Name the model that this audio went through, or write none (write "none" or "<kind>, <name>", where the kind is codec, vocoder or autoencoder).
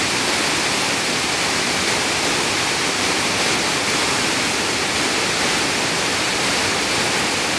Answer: vocoder, BigVGAN v2